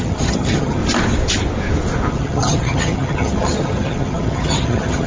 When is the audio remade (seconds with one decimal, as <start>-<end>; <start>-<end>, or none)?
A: 0.0-0.8; 2.1-5.1